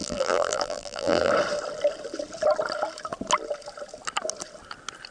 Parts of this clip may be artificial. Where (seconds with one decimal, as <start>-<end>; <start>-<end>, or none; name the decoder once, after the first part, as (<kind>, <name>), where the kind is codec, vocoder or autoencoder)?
0.0-1.3 (vocoder, BigVGAN v2)